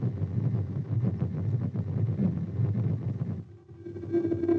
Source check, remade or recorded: recorded